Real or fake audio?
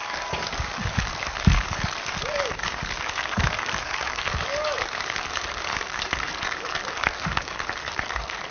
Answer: fake